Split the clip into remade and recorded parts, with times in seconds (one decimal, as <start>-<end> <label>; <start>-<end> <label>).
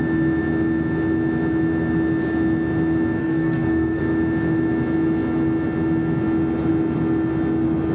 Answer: 0.0-3.2 recorded; 3.2-4.0 remade; 4.0-7.9 recorded